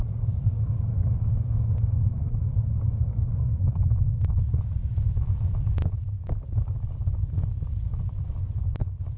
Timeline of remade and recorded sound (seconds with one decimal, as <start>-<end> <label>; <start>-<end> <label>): 0.0-9.2 recorded